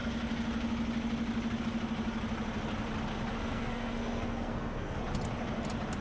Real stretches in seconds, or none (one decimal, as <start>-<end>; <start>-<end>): 0.0-3.4; 5.0-6.0